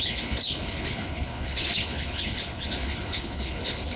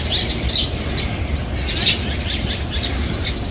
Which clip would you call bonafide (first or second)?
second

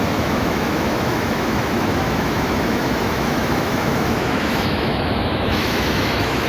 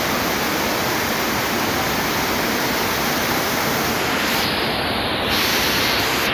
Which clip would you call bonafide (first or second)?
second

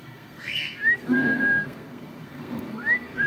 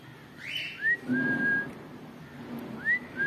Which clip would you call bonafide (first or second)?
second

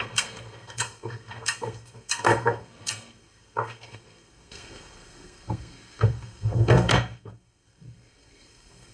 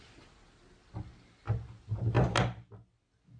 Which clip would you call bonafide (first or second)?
second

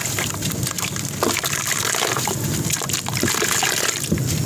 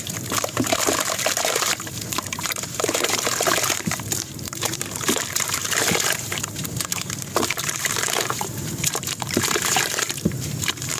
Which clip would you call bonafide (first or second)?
first